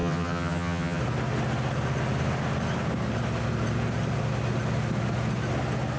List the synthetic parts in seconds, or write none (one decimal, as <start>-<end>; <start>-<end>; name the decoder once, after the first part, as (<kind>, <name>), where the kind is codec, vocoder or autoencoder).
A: 0.0-1.0 (vocoder, HiFi-GAN)